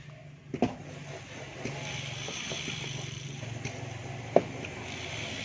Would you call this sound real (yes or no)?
yes